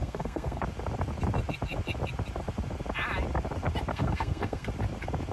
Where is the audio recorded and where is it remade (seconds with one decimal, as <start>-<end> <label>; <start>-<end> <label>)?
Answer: 0.0-0.6 remade; 0.6-3.9 recorded; 3.9-4.7 remade; 4.7-5.3 recorded